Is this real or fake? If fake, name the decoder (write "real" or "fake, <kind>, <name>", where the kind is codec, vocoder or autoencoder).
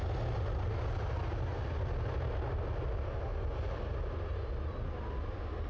real